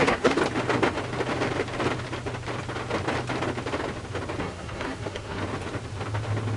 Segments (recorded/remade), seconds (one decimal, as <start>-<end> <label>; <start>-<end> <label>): 0.0-0.4 remade; 0.4-4.4 recorded; 4.4-5.4 remade; 5.4-6.6 recorded